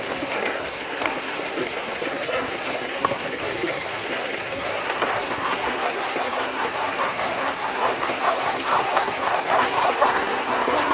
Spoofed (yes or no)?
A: yes